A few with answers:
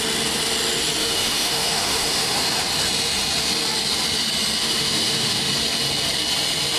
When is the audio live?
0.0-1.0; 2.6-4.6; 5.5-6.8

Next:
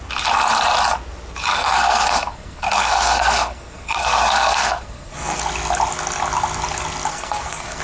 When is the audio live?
0.0-1.5; 5.4-7.1

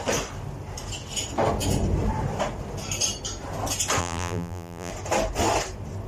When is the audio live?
0.0-4.0; 4.9-6.1

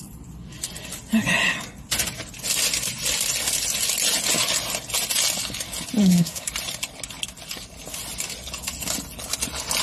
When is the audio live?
0.0-6.0; 6.5-9.8

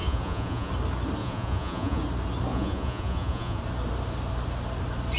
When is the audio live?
0.7-1.2; 2.0-2.5; 3.6-5.2

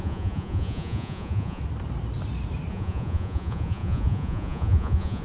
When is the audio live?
1.6-2.7

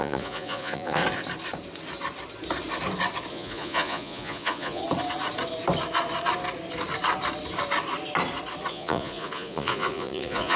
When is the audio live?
1.0-3.3; 4.8-8.7

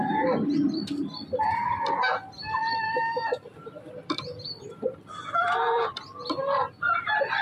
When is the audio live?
0.0-2.6; 7.0-7.4